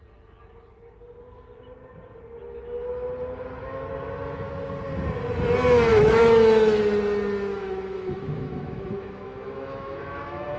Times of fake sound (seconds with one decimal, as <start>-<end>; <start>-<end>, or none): 5.9-6.8; 7.5-10.6